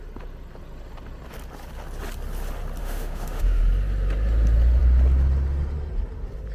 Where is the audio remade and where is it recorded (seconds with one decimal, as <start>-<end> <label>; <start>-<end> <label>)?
0.0-2.8 recorded; 2.8-3.6 remade; 3.6-6.5 recorded